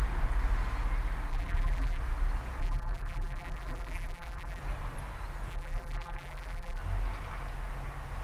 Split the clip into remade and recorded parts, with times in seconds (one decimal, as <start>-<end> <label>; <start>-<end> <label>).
0.0-1.3 recorded; 1.3-2.0 remade; 2.0-2.6 recorded; 2.6-4.6 remade; 4.6-5.5 recorded; 5.5-6.8 remade; 6.8-8.2 recorded